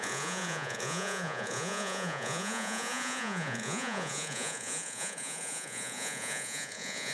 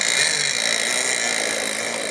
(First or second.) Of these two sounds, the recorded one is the second